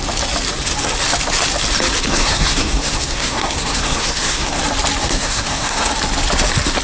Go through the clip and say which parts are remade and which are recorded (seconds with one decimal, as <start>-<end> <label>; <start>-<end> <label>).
0.0-2.1 recorded; 2.1-4.6 remade; 4.6-5.0 recorded; 5.0-5.9 remade; 5.9-6.8 recorded